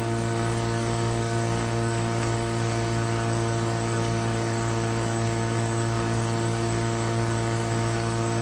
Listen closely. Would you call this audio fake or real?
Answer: fake